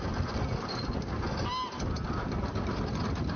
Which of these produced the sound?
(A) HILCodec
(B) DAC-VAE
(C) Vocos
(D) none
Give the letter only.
D